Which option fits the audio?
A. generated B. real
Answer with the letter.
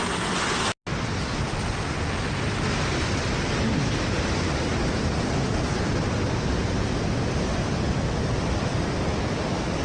B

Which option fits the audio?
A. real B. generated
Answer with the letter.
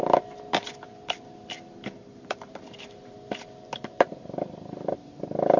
B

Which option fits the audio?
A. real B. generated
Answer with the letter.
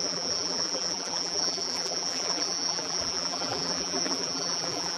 B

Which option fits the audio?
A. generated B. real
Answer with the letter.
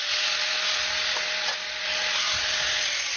B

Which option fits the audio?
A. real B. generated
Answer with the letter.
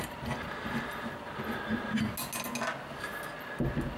A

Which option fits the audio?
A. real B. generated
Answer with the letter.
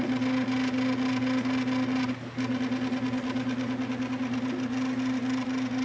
A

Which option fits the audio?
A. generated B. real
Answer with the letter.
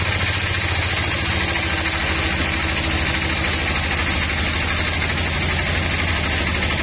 B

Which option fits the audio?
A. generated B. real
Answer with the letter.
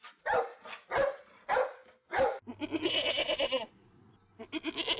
B